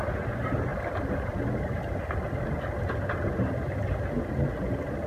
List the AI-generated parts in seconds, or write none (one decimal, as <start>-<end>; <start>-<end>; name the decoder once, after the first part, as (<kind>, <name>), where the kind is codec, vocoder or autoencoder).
none